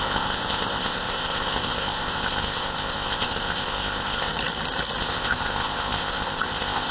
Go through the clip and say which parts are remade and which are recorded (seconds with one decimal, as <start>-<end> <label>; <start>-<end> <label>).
0.0-4.3 remade; 4.3-5.0 recorded; 5.0-6.9 remade